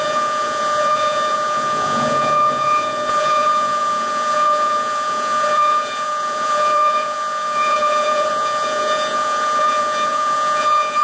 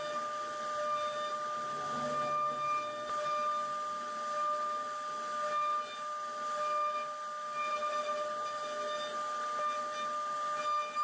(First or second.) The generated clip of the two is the first